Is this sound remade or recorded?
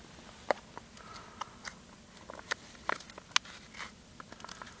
recorded